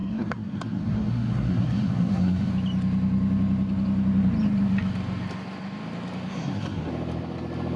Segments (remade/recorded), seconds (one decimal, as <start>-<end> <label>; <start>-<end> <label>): 0.0-2.5 remade; 2.5-6.3 recorded; 6.3-6.9 remade; 6.9-7.8 recorded